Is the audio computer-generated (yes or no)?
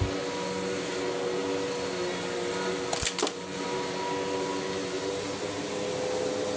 no